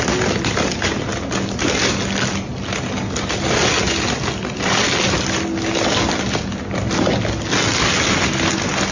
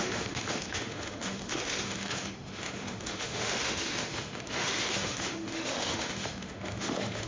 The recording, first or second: first